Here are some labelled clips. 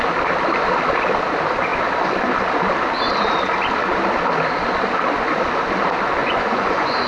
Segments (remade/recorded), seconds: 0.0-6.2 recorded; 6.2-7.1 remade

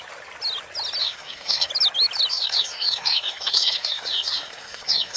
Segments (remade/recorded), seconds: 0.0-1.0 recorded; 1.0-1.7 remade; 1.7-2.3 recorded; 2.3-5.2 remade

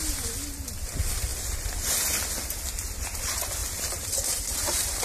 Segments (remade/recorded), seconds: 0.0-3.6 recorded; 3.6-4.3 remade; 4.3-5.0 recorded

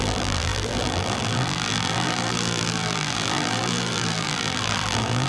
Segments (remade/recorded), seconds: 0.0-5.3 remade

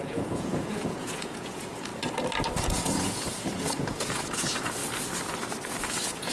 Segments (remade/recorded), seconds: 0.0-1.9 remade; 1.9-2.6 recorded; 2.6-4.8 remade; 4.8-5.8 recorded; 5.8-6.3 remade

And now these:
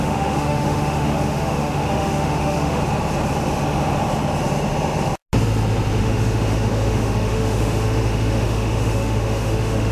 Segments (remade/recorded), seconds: 0.0-2.8 remade; 2.8-6.0 recorded; 6.0-9.9 remade

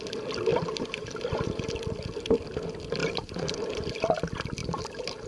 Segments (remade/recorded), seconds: 0.0-0.5 recorded; 0.5-1.7 remade; 1.7-3.0 recorded; 3.0-3.8 remade; 3.8-4.6 recorded; 4.6-5.3 remade